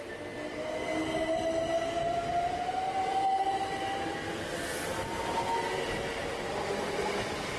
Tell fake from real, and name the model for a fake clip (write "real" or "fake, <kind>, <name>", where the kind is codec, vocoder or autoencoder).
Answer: real